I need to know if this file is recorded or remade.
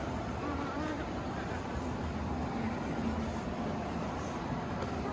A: remade